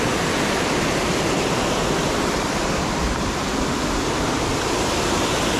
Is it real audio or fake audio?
real